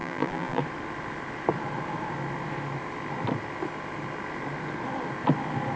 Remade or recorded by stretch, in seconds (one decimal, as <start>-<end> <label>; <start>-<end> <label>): 0.0-0.6 remade; 0.6-5.8 recorded